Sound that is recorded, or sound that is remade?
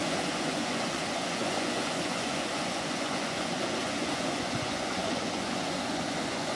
remade